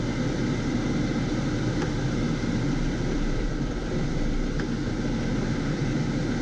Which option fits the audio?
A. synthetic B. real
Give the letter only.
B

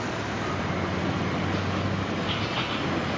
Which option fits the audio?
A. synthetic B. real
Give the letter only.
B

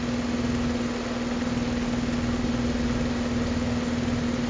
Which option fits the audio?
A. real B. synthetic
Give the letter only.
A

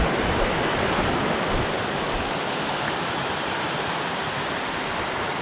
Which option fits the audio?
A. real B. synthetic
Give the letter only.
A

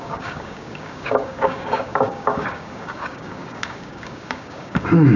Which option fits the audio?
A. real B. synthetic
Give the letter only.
B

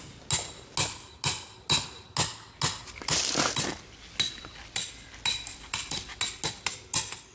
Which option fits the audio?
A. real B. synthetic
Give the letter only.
A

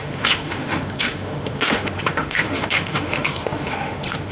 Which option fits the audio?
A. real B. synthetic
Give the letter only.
B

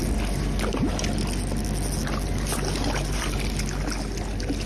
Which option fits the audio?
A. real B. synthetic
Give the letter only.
A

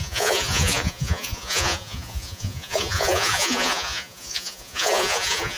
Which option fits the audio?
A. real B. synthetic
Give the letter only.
B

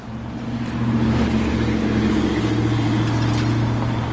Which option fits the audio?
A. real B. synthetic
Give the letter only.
A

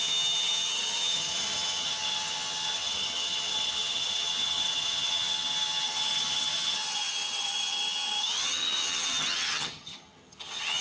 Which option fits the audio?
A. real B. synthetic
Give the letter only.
B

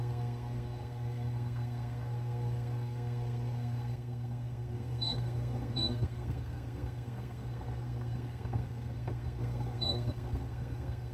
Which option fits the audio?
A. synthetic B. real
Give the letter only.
A